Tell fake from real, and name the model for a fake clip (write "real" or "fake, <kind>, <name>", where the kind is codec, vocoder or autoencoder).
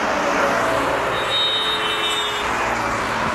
real